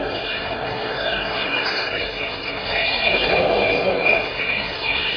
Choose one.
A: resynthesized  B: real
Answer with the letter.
A